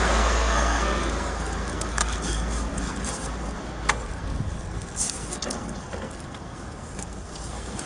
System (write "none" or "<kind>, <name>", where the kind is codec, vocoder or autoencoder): codec, SNAC